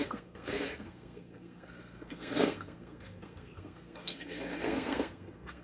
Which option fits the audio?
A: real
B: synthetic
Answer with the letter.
B